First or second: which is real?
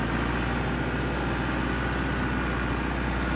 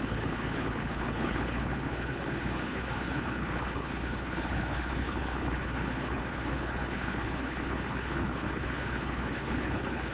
first